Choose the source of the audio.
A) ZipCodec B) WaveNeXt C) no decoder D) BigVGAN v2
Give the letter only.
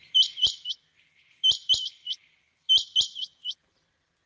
D